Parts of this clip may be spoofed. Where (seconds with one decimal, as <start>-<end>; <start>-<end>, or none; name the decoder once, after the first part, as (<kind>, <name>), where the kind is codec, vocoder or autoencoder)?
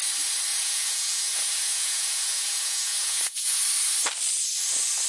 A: 0.5-3.6 (vocoder, Vocos)